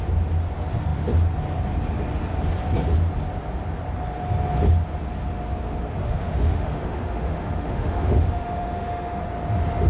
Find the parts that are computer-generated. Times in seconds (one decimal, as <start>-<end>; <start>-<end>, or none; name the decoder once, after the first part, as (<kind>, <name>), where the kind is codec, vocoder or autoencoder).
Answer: 6.0-9.2 (autoencoder, DAC-VAE)

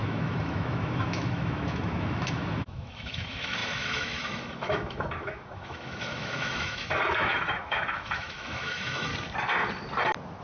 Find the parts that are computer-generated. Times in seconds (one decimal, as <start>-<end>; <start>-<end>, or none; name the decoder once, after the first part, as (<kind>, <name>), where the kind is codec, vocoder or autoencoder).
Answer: 0.0-9.1 (autoencoder, DAC-VAE)

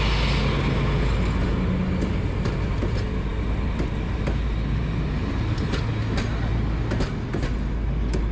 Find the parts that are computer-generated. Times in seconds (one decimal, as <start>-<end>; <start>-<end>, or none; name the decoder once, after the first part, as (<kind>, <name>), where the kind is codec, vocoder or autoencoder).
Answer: none

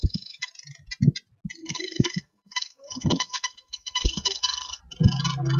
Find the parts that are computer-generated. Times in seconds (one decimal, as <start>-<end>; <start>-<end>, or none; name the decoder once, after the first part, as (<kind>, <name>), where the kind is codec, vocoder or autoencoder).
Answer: 0.0-0.5 (codec, SNAC); 1.6-4.8

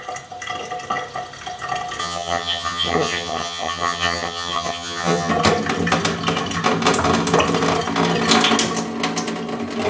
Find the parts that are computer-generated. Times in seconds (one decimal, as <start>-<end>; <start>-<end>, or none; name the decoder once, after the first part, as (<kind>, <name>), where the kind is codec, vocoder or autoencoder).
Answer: 2.0-5.3 (vocoder, HiFi-GAN)